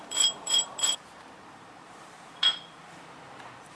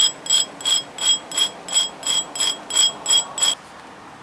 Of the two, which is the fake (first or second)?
first